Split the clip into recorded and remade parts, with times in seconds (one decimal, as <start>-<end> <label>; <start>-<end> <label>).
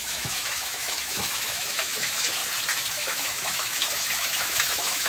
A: 0.0-2.4 remade; 2.4-2.9 recorded; 2.9-5.1 remade